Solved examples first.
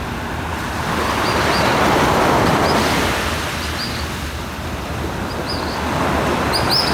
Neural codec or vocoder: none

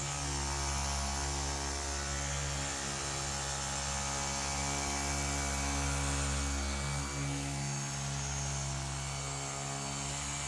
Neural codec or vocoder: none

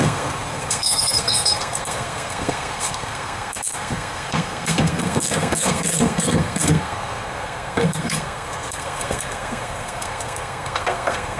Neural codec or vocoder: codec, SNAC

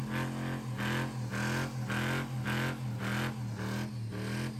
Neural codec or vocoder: none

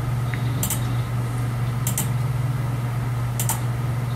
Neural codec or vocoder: none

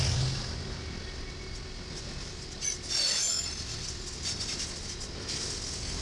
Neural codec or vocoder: none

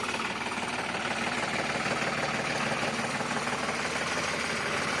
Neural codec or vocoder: none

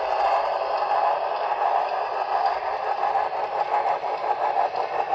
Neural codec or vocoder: none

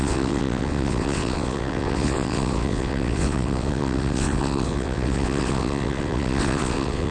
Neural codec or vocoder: vocoder, WaveNeXt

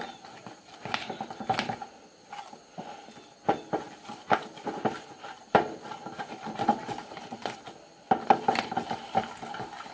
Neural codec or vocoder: none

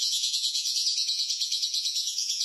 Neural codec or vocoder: vocoder, Vocos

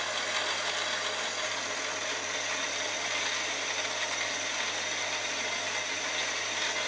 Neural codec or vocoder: none